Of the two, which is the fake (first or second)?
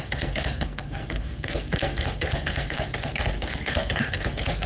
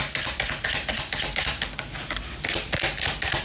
first